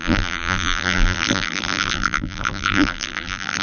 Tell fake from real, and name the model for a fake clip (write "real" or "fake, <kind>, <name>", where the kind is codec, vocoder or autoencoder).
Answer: fake, vocoder, BigVGAN v2